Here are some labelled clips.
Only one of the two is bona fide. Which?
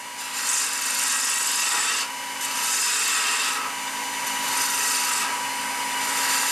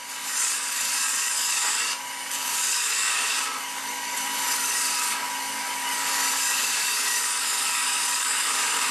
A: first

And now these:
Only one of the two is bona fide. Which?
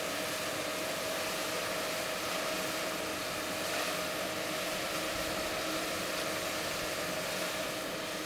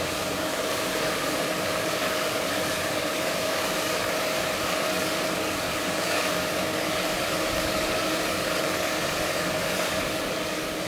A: first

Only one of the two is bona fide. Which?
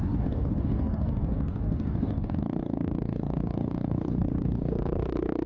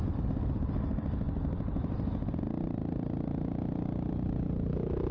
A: second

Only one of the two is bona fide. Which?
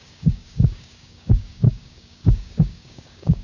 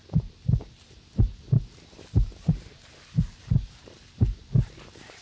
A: second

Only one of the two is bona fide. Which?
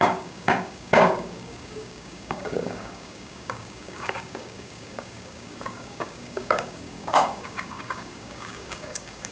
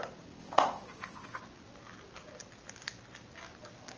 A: second